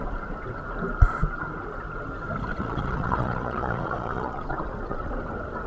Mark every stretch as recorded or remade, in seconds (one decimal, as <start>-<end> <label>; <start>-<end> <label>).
0.0-2.5 recorded; 2.5-5.1 remade; 5.1-5.7 recorded